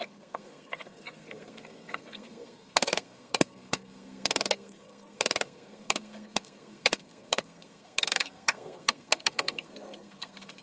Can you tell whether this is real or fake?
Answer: fake